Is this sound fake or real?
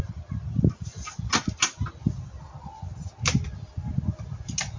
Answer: real